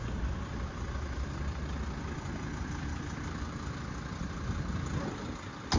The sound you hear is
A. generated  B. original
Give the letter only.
B